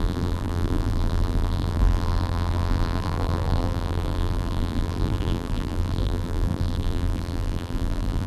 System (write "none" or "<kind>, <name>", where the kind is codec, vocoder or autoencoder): vocoder, BigVGAN v2